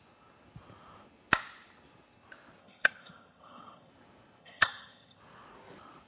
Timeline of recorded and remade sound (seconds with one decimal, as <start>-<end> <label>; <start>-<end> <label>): 0.0-2.6 recorded; 2.6-3.9 remade; 3.9-4.4 recorded; 4.4-5.2 remade; 5.2-6.1 recorded

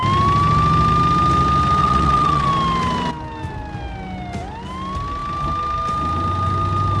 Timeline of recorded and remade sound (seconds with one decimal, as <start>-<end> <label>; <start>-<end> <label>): 0.0-1.8 recorded; 1.8-2.5 remade; 2.5-7.0 recorded

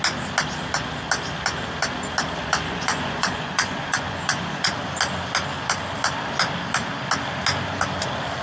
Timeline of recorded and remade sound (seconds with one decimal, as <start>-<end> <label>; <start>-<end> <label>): 0.0-2.4 recorded; 2.4-4.7 remade; 4.7-8.4 recorded

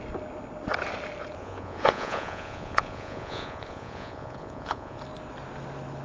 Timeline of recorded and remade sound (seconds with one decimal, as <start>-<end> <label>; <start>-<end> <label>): 0.0-1.4 recorded; 1.4-5.0 remade; 5.0-6.0 recorded

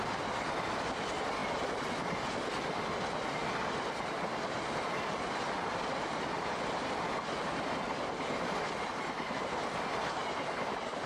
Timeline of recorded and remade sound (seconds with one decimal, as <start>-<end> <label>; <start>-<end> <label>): 0.0-11.1 recorded